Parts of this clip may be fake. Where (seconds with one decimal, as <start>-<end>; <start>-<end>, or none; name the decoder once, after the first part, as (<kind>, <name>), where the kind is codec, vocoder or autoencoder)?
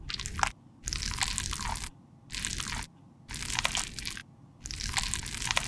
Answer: none